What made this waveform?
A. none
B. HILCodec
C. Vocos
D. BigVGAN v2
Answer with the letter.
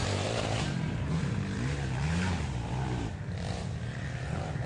D